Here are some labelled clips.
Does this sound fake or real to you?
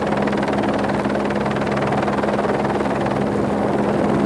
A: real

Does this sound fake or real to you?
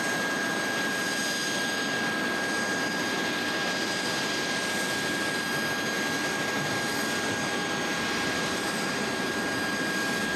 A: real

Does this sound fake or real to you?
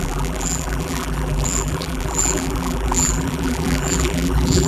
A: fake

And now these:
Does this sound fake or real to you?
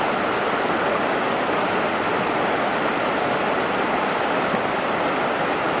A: real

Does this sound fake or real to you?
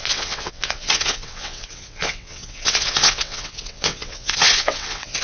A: fake